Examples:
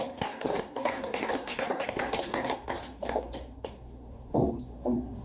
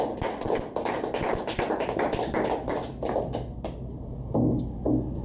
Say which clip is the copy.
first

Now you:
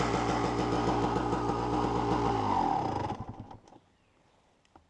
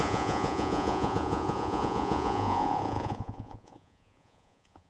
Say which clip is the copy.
second